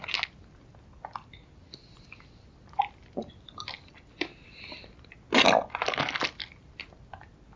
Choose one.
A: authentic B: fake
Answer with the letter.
A